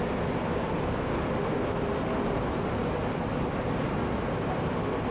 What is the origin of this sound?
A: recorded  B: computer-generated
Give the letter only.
A